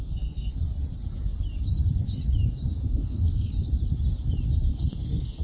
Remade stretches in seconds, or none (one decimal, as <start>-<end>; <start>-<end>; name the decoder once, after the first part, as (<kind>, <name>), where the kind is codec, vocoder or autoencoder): 0.0-0.6 (codec, SNAC); 2.7-3.5; 4.7-5.4